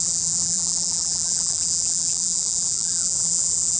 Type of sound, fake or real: fake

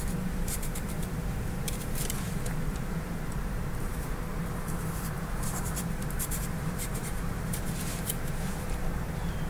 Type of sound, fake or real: fake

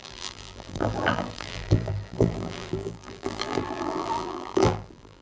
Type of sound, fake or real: fake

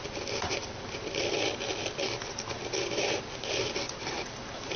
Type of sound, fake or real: fake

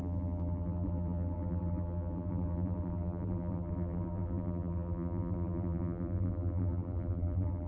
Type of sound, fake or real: fake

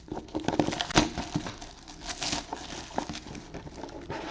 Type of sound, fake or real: real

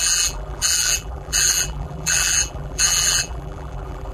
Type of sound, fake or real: fake